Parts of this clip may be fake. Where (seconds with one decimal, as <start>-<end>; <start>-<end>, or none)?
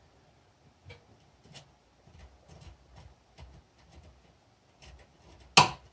none